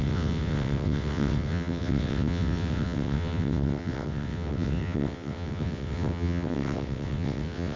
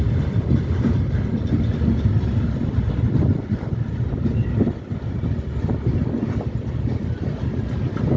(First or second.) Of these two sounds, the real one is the second